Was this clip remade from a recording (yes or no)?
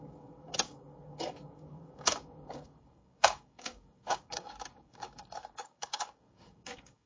yes